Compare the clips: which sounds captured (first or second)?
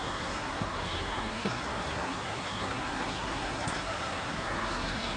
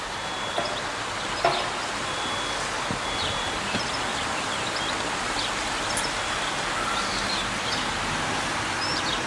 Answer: second